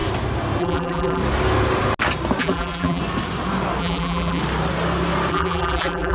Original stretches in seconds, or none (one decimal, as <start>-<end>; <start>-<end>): 0.0-0.6; 1.2-2.4; 3.0-3.8; 4.4-5.3